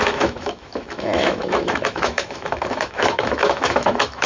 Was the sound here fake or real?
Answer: fake